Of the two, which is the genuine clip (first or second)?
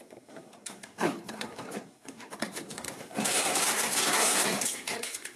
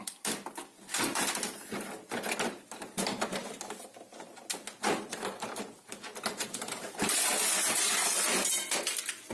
second